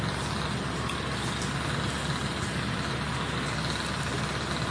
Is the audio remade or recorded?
recorded